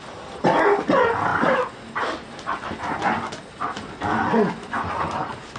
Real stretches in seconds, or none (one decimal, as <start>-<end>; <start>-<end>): 0.0-5.6